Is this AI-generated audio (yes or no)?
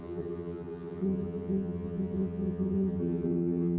yes